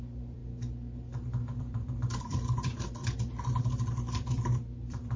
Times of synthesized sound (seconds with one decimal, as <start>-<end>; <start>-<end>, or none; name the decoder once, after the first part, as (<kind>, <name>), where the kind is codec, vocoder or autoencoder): 0.0-0.4 (vocoder, BigVGAN v2); 1.6-3.0; 3.6-5.2